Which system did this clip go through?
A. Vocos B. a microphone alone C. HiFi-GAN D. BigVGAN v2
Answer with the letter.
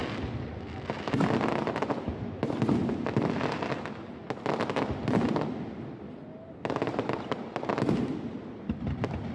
B